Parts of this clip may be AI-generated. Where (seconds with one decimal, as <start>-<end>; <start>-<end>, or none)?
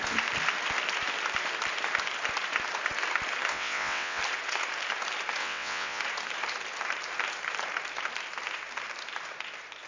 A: 3.5-4.2; 5.4-6.0